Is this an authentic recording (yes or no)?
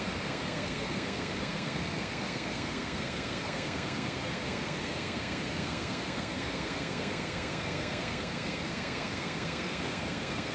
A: no